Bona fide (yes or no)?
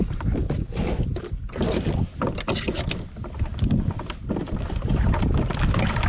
yes